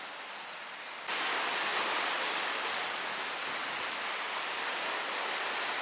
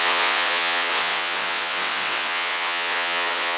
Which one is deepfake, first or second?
second